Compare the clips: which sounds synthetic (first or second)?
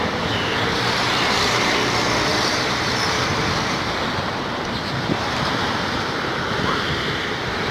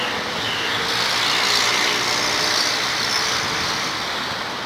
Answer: first